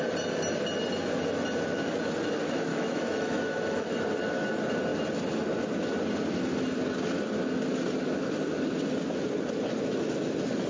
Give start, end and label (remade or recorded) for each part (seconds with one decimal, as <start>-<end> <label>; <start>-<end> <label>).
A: 0.0-2.7 recorded; 2.7-4.0 remade; 4.0-10.7 recorded